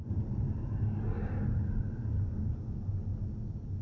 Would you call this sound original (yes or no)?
yes